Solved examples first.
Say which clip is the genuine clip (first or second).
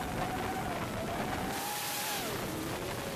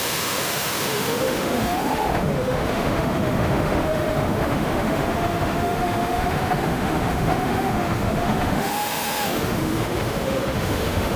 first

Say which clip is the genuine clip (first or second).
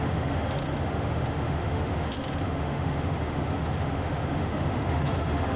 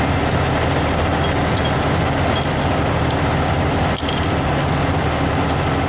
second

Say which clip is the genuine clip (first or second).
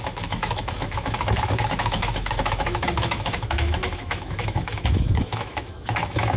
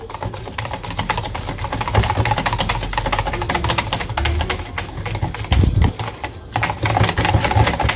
second